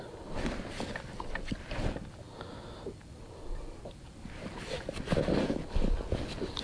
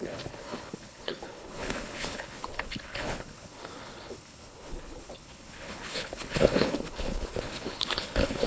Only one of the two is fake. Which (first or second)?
second